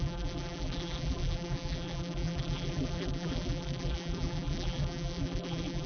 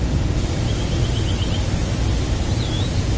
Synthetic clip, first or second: first